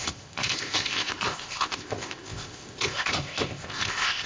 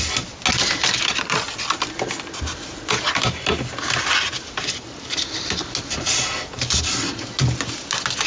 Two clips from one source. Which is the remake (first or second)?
first